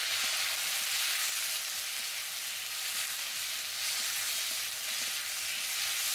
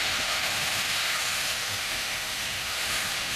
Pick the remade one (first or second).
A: second